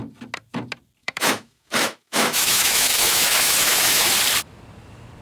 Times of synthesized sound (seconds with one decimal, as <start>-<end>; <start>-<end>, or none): 1.0-4.1